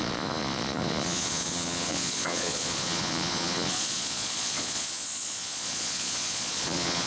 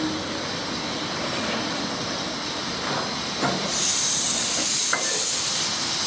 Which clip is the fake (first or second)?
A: first